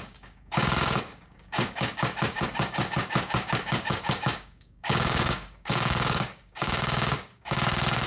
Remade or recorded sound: remade